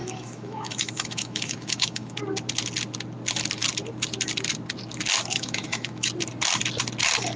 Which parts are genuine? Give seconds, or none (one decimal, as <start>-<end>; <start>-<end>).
2.2-5.3; 6.1-7.4